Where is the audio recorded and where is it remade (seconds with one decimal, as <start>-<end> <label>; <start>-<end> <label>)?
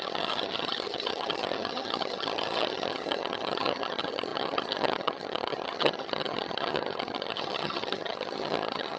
0.0-9.0 remade